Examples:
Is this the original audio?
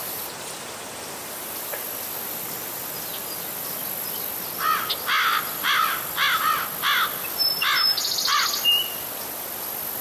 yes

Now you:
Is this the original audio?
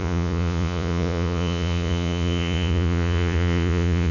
no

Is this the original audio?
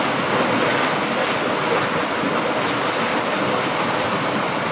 yes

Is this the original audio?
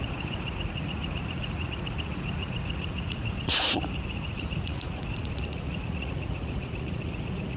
no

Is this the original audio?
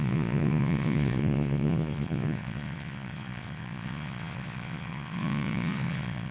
no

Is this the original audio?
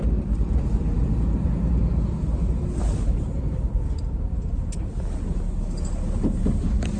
yes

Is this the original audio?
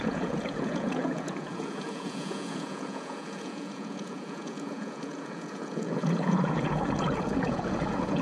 no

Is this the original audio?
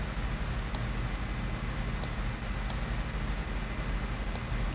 yes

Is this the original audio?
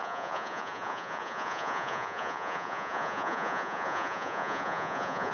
no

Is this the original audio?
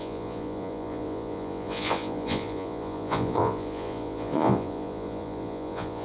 no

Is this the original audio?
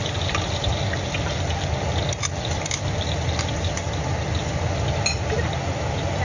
yes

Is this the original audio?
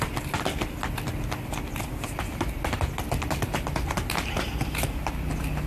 yes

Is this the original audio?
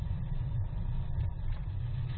no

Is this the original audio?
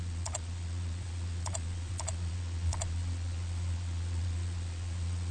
no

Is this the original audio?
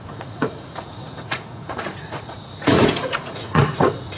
no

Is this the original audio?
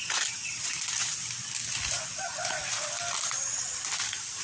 yes